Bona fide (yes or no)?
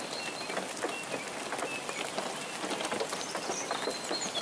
yes